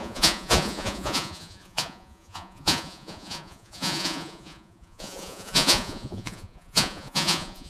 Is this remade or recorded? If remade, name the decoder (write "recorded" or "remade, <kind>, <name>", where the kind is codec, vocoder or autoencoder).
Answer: remade, vocoder, Vocos